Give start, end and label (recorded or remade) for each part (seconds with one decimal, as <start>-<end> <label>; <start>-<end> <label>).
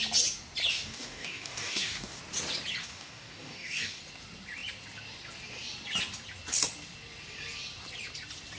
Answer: 0.0-0.7 recorded; 0.7-2.2 remade; 2.2-2.8 recorded; 2.8-4.0 remade; 4.0-8.6 recorded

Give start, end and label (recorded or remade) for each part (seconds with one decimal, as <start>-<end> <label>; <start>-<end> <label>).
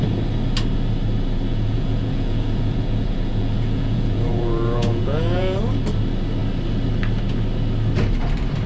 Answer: 0.0-1.5 recorded; 1.5-5.6 remade; 5.6-8.7 recorded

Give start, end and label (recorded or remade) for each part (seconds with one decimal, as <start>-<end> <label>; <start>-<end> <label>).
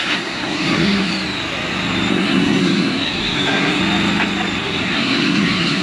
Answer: 0.0-1.1 remade; 1.1-2.1 recorded; 2.1-3.8 remade; 3.8-4.6 recorded; 4.6-5.8 remade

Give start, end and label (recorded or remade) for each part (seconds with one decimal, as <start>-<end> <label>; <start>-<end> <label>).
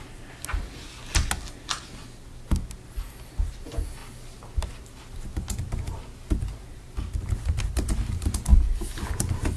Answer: 0.0-9.6 recorded